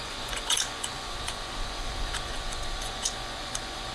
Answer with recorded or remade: remade